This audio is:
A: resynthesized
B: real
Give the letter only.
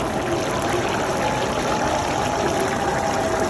B